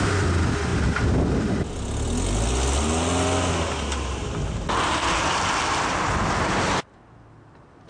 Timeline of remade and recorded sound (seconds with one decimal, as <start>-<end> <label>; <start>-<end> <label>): 0.0-7.9 recorded